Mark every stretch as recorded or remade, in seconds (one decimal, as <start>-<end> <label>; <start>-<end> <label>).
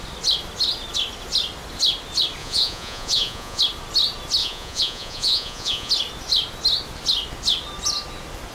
0.0-2.4 recorded; 2.4-3.6 remade; 3.6-4.4 recorded; 4.4-5.9 remade; 5.9-8.5 recorded